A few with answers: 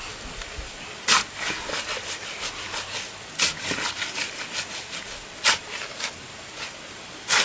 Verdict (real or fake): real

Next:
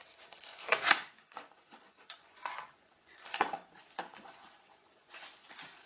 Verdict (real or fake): fake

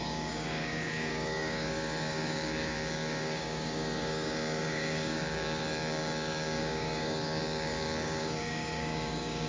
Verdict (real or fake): fake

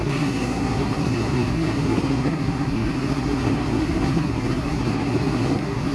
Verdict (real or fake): fake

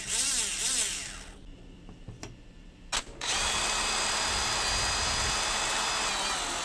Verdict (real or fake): real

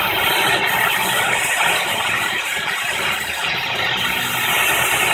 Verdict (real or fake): real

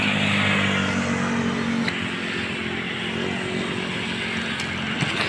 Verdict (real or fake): real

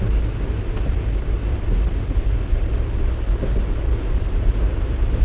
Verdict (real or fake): real